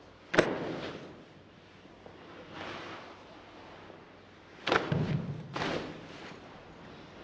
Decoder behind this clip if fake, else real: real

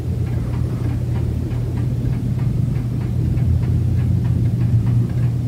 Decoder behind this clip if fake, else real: real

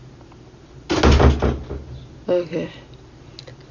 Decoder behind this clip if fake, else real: real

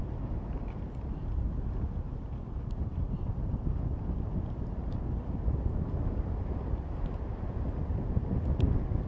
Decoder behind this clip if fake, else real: real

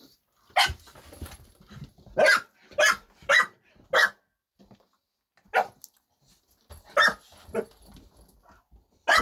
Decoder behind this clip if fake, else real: real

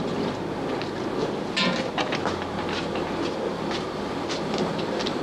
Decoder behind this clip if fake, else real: real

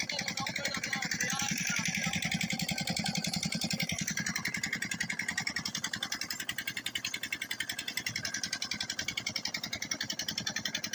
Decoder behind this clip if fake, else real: real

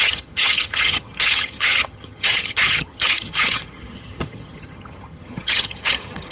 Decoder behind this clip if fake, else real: fake, vocoder, HiFi-GAN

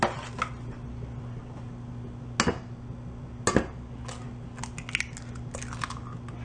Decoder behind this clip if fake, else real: real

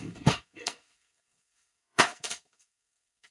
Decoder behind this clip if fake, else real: fake, codec, SNAC